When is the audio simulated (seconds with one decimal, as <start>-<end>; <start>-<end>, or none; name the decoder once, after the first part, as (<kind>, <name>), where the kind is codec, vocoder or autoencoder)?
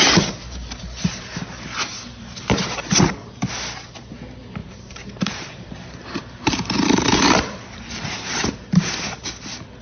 4.6-8.9 (vocoder, BigVGAN v2)